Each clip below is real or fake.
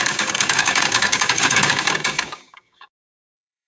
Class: fake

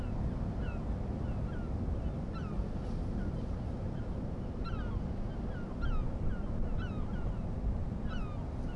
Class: real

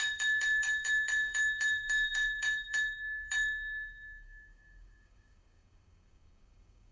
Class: fake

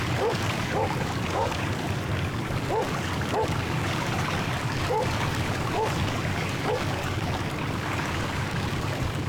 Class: fake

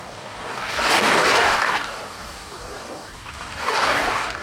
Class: fake